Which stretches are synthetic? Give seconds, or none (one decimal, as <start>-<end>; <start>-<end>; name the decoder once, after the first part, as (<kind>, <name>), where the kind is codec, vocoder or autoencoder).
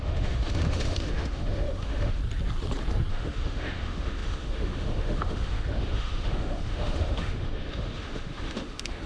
0.0-2.2 (autoencoder, DAC-VAE); 3.1-9.1